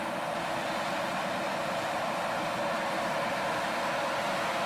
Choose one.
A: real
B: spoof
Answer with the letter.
A